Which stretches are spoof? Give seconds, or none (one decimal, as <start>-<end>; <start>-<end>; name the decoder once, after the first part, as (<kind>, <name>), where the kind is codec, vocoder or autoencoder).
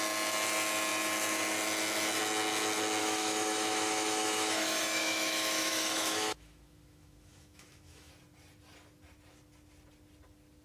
3.0-8.1 (autoencoder, DAC-VAE)